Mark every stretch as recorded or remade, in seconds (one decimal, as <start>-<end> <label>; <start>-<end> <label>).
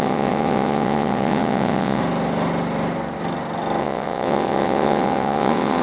0.0-2.0 remade; 2.0-3.8 recorded; 3.8-5.8 remade